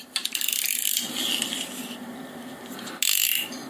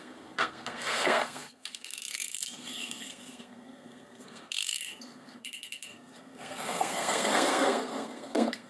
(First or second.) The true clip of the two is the first